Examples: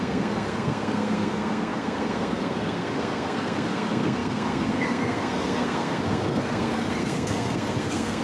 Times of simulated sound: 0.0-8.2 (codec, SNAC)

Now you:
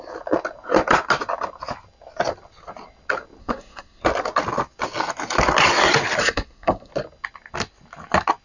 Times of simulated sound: 3.4-4.0 (codec, SNAC); 6.2-6.9

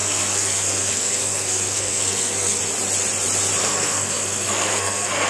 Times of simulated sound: 0.0-2.6 (codec, SNAC); 3.6-5.3

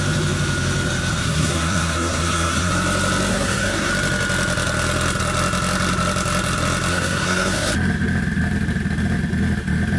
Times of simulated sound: 1.2-2.7 (codec, SNAC); 3.3-3.9; 6.9-7.7

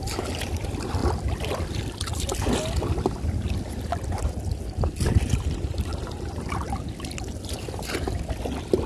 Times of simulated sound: none